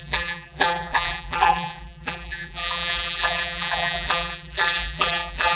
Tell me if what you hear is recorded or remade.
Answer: remade